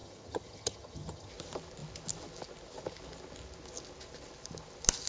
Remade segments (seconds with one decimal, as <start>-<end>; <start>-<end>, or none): 0.0-1.3